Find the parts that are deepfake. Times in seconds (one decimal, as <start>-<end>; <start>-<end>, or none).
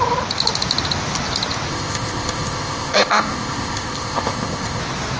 1.7-4.8